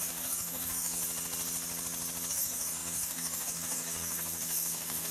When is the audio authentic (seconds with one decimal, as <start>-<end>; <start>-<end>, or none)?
1.0-2.3